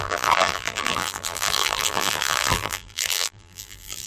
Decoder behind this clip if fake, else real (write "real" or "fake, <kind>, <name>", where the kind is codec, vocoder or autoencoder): fake, vocoder, BigVGAN v2